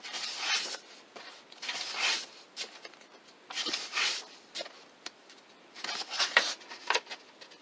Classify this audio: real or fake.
real